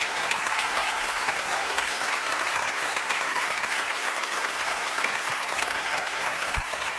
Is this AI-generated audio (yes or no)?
yes